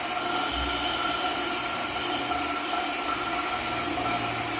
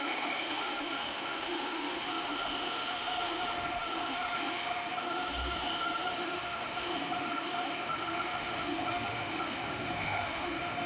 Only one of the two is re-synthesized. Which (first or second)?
second